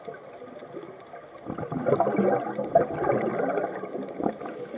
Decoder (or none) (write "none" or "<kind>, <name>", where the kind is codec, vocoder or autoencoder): vocoder, BigVGAN v2